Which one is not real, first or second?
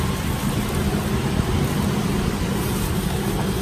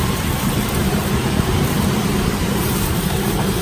second